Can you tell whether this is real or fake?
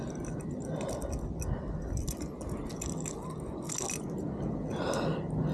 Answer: real